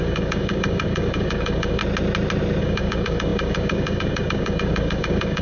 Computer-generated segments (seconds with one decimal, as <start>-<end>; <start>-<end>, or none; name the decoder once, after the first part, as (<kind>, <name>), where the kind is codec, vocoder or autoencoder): 0.0-1.8 (codec, DAC); 2.6-5.4